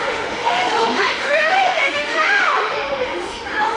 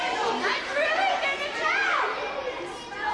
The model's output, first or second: first